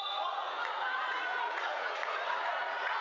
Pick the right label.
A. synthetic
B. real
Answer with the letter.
A